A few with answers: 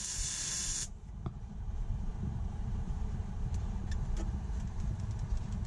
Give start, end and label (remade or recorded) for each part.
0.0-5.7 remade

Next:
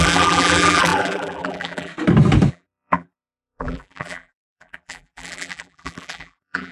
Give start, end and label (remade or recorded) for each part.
0.0-1.9 remade; 1.9-2.5 recorded; 2.5-6.7 remade

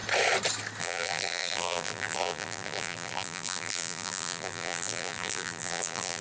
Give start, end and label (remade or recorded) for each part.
0.0-0.8 recorded; 0.8-6.2 remade